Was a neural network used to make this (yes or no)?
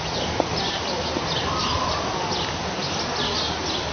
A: no